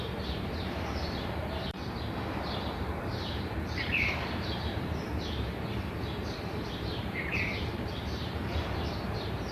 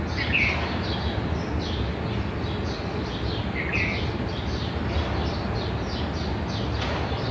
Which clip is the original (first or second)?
second